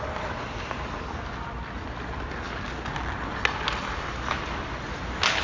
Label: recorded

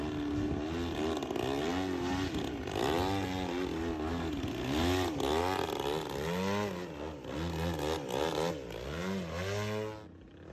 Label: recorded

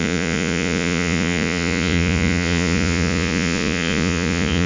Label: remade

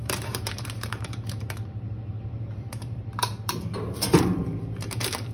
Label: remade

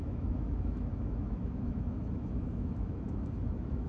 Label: remade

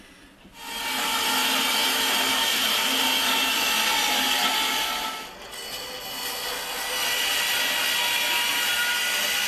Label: recorded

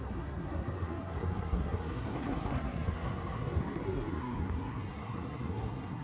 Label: remade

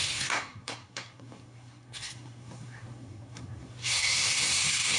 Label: remade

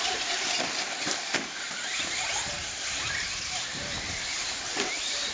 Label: remade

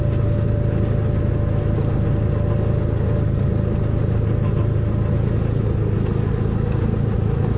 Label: recorded